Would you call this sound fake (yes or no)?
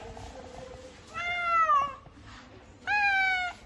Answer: no